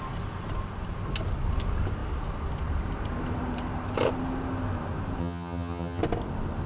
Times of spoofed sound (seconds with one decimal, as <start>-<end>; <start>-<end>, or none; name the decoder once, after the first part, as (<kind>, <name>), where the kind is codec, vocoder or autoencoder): 5.2-6.0 (vocoder, HiFi-GAN)

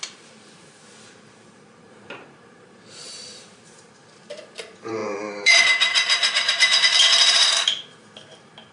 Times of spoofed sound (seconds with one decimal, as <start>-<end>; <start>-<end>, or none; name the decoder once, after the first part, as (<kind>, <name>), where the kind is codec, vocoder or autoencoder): 0.0-8.7 (vocoder, BigVGAN v2)

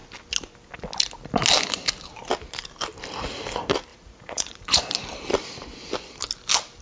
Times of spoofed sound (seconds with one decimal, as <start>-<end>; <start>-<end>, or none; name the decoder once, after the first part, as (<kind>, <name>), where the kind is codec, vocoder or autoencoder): 3.9-4.8 (vocoder, Vocos)